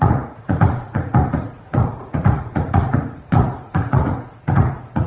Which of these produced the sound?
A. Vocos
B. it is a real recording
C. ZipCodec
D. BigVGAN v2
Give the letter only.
A